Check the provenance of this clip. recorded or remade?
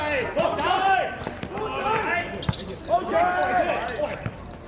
recorded